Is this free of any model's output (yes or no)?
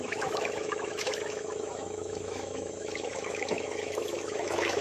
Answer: no